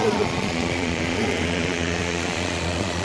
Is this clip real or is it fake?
fake